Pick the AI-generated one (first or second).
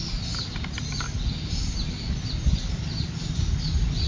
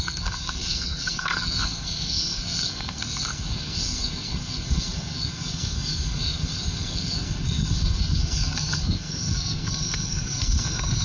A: second